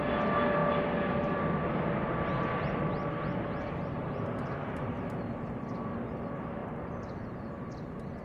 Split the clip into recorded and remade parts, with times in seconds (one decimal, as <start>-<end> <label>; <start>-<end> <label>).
0.0-6.6 recorded; 6.6-7.4 remade; 7.4-8.2 recorded